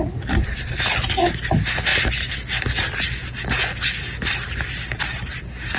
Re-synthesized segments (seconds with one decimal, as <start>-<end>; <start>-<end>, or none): none